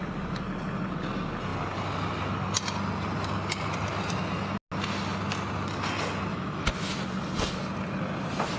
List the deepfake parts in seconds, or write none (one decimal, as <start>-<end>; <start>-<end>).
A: 6.3-6.9